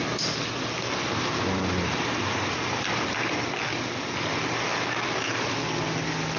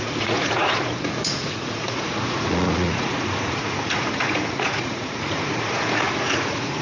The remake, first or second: second